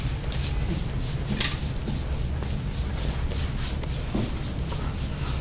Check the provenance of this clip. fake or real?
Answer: real